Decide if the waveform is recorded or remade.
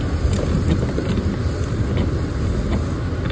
recorded